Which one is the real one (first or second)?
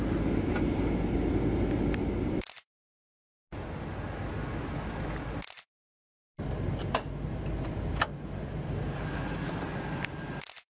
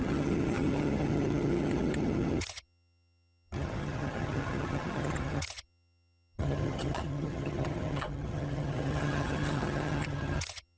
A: first